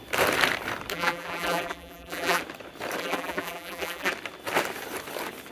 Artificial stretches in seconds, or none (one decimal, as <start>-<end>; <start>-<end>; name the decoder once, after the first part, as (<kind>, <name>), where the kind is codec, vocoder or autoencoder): 0.9-2.4 (vocoder, BigVGAN v2); 3.0-4.1